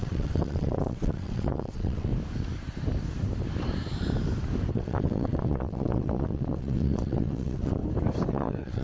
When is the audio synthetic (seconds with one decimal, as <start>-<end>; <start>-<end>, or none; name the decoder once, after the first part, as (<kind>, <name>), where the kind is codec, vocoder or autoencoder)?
0.0-2.1 (vocoder, WaveNeXt); 4.7-7.8; 8.3-8.8